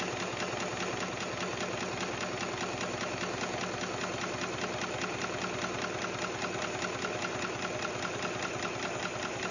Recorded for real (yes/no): yes